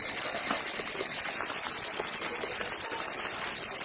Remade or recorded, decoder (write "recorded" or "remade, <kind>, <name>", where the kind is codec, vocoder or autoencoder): recorded